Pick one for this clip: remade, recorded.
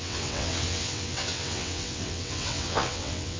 remade